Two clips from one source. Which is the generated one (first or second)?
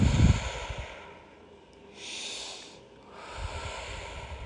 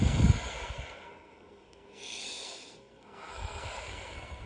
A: second